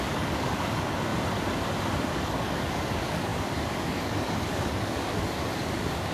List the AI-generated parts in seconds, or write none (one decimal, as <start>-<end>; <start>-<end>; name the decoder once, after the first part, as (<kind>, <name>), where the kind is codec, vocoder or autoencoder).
0.0-1.1 (codec, DAC); 2.0-6.1